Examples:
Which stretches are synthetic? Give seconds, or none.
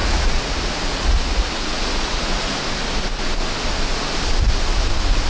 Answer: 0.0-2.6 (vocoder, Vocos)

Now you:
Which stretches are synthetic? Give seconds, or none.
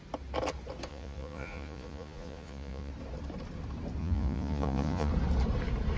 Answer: 0.9-2.9 (vocoder, Vocos); 4.0-5.1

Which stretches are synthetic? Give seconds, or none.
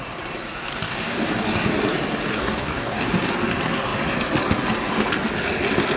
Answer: 0.8-1.3 (codec, DAC); 2.3-3.1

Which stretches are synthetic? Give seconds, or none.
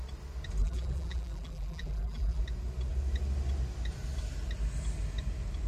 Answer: 0.6-2.4 (vocoder, BigVGAN v2)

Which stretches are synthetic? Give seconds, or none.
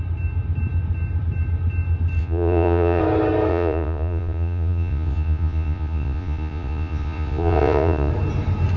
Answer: 2.2-3.0 (vocoder, Vocos); 3.5-8.1